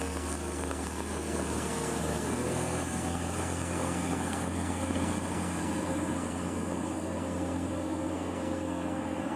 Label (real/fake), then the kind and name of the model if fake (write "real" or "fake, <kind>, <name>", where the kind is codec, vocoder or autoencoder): fake, codec, SNAC